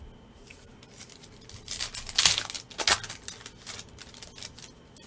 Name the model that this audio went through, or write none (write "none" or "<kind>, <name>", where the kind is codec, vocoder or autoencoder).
none